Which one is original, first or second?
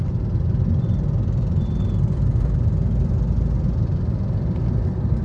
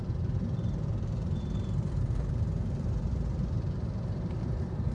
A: first